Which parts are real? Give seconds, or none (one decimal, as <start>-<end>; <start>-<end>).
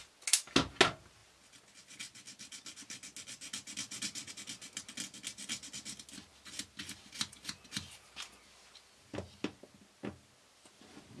0.0-11.2